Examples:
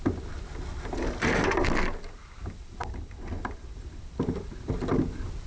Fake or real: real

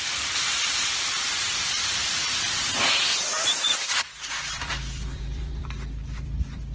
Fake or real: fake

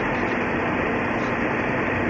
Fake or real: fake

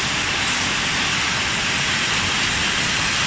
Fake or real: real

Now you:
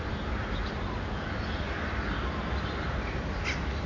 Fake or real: fake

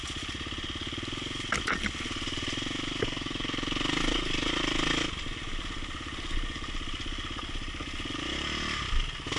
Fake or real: real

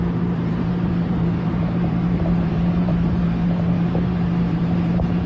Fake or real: fake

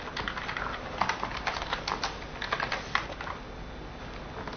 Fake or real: real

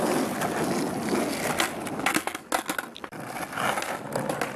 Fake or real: real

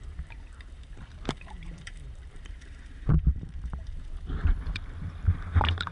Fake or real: fake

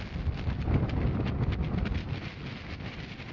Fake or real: real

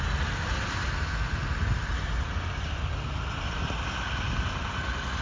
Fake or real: real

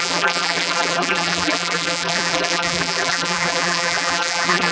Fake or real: fake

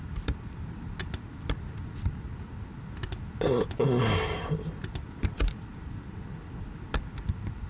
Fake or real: real